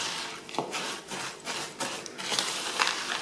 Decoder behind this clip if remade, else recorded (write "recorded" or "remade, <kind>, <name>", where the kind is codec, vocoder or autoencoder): recorded